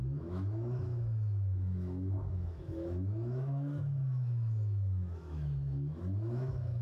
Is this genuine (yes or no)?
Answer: no